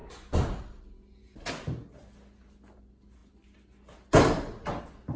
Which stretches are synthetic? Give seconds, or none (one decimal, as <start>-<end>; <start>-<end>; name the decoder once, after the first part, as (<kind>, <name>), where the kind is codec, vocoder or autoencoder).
none